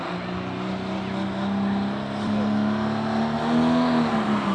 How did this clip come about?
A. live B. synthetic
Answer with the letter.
A